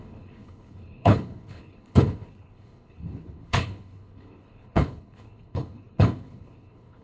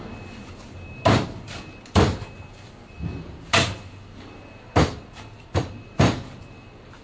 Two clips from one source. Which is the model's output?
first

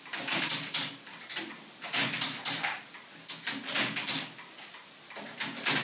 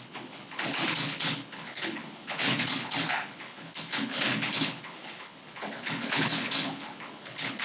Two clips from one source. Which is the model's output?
second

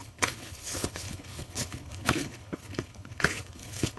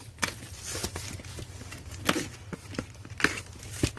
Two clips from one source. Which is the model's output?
first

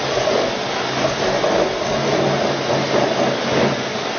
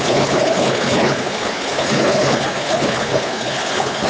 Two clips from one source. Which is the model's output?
second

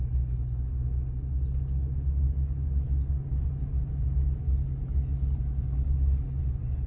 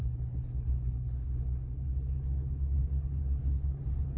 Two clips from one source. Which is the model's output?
second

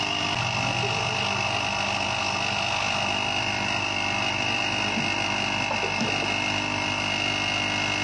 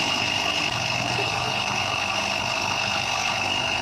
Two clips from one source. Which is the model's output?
second